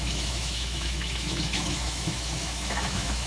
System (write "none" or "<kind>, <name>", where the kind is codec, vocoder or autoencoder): autoencoder, DAC-VAE